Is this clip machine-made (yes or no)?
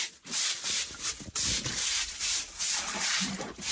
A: yes